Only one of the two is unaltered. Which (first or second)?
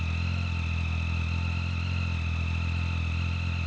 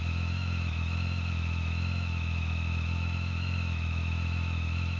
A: first